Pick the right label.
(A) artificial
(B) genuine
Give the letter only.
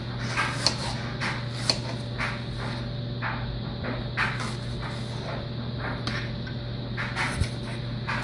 B